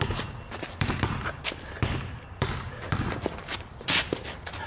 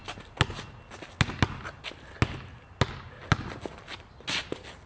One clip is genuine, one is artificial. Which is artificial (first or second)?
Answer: first